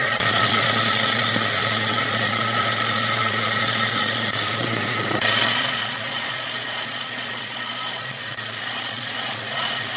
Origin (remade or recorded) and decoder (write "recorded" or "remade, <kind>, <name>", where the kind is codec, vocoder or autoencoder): remade, vocoder, Vocos